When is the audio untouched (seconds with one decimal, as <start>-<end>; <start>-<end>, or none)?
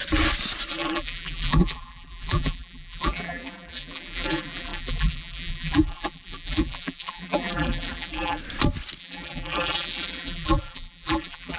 0.0-0.7; 8.4-9.0